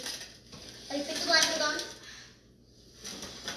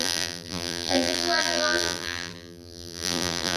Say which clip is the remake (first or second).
second